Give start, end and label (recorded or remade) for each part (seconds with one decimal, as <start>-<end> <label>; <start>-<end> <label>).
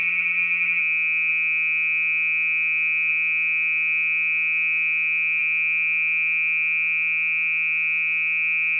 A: 0.0-0.8 remade; 0.8-8.8 recorded